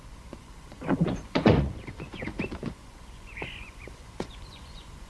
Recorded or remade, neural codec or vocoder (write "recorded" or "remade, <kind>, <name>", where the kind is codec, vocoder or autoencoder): remade, vocoder, Vocos